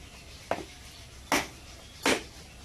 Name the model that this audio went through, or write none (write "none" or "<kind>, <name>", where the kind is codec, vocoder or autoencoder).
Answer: none